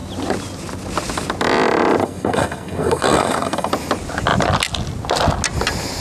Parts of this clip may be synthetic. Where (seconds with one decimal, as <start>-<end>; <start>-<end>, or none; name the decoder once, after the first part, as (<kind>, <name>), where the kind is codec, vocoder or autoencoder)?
2.0-3.7 (codec, SNAC)